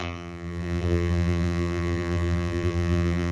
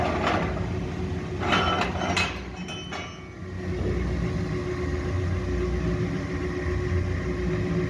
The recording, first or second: second